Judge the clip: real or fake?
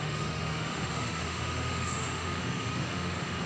fake